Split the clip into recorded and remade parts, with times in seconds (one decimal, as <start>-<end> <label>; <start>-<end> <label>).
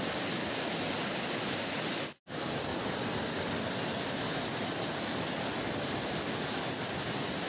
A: 0.0-7.5 recorded